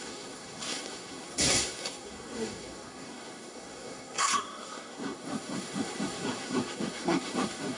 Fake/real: fake